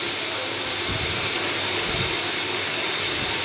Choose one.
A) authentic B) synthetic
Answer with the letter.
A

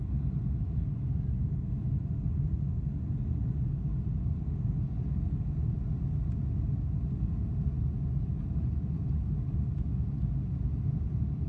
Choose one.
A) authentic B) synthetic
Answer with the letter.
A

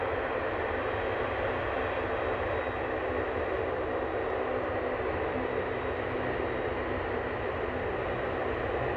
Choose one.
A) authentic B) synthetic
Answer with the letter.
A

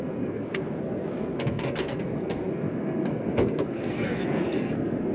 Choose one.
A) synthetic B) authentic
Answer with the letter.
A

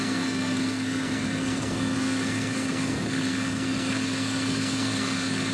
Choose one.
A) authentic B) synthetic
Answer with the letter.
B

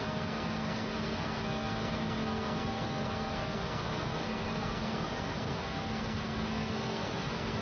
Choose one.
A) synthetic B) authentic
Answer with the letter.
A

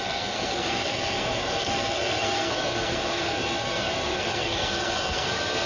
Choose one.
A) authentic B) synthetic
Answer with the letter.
B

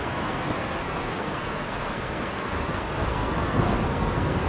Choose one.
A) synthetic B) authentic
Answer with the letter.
A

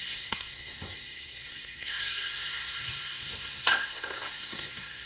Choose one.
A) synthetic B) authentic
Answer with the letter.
A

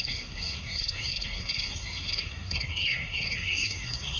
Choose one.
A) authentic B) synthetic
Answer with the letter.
B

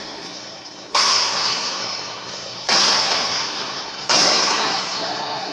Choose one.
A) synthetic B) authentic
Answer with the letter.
A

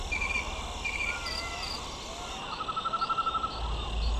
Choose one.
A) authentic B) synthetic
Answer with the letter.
A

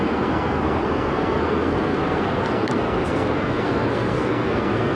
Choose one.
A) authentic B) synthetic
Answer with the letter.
B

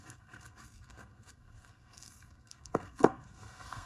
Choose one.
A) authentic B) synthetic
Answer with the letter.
B